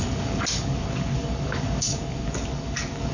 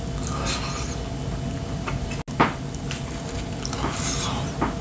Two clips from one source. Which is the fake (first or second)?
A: first